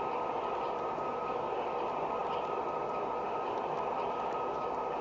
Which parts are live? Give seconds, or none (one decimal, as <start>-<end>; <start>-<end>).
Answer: 0.0-5.0